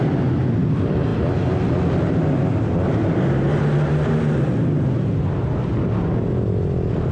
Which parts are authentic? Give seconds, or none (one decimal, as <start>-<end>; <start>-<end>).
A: 0.0-7.1